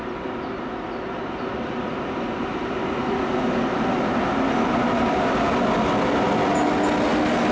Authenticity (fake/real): real